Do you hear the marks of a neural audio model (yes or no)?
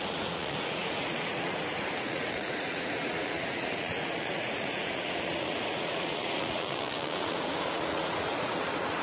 yes